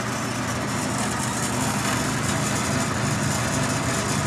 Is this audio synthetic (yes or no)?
no